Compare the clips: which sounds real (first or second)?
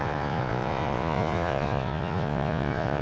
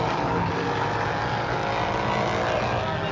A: second